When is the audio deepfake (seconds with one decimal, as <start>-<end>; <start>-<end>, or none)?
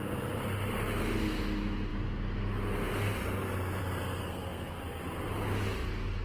4.2-4.8